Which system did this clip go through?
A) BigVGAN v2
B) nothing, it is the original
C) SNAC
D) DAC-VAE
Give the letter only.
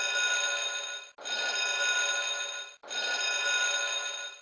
B